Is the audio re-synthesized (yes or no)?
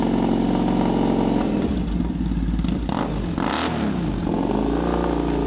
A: no